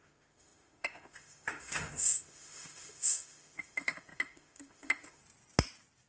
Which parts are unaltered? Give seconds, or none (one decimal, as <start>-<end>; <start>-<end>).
5.2-6.1